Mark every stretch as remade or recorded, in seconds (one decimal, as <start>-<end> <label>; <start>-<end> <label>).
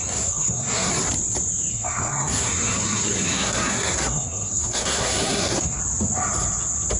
0.0-0.9 remade; 0.9-1.7 recorded; 1.7-5.8 remade; 5.8-7.0 recorded